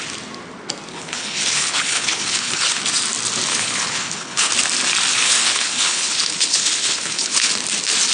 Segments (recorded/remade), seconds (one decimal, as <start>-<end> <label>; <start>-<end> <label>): 0.0-0.9 recorded; 0.9-2.8 remade; 2.8-3.5 recorded; 3.5-4.5 remade; 4.5-5.1 recorded; 5.1-7.5 remade; 7.5-8.1 recorded